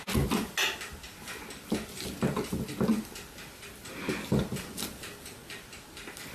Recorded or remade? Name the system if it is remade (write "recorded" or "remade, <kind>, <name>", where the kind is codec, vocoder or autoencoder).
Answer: recorded